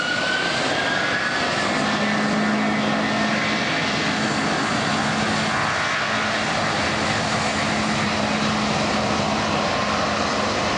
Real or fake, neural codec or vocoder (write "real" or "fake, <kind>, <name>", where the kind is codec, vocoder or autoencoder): real